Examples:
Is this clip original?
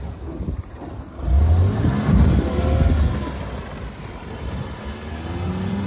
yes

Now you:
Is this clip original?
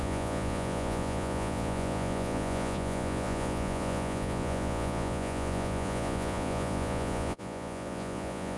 no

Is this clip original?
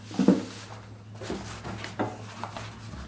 yes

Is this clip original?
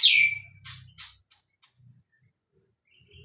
yes